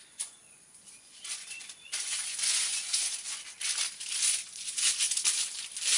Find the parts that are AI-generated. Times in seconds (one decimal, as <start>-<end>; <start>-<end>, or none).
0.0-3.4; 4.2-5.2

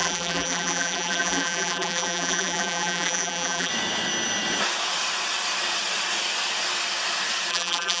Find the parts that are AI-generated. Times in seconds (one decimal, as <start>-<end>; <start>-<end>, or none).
0.0-3.7; 7.5-8.0

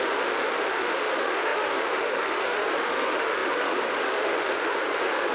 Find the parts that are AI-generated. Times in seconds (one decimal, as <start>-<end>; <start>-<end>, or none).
0.0-5.3